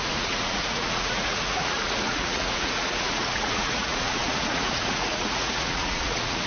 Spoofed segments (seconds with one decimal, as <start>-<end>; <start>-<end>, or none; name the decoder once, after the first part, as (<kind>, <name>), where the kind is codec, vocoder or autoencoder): 0.0-6.5 (vocoder, Vocos)